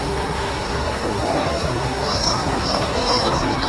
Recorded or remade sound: remade